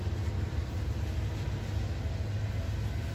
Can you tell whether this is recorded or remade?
recorded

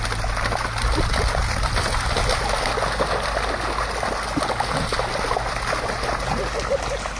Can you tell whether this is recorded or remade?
recorded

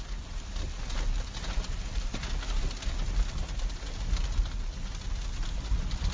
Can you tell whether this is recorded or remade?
recorded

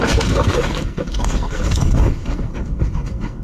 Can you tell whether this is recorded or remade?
remade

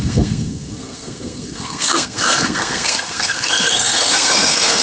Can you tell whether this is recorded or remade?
remade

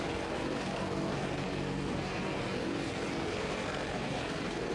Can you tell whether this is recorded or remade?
remade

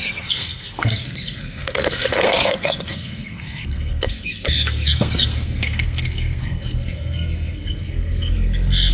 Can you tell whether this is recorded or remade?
remade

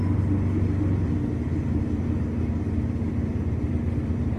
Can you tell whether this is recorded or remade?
recorded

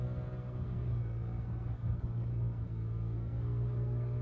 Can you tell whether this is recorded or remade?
remade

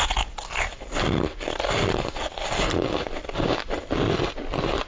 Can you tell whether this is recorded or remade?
recorded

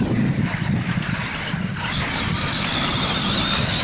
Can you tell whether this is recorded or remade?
recorded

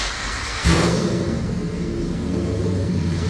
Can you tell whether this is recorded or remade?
remade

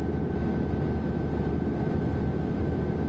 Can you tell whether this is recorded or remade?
recorded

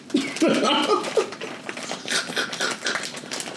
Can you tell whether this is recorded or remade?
recorded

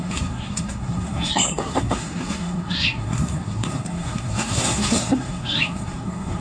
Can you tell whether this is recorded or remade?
remade